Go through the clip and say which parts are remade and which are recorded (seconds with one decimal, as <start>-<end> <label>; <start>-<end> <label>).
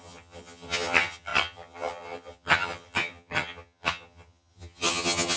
0.0-5.4 remade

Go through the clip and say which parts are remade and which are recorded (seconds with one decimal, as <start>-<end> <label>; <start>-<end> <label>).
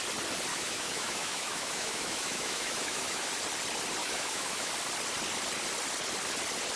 0.0-0.5 recorded; 0.5-3.3 remade; 3.3-4.0 recorded; 4.0-4.7 remade; 4.7-6.8 recorded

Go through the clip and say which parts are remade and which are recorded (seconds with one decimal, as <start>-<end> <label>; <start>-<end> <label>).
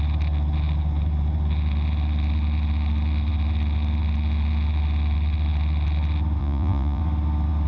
0.0-6.4 recorded; 6.4-7.0 remade; 7.0-7.7 recorded